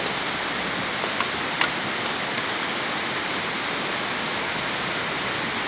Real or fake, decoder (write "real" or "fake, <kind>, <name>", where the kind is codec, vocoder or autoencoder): real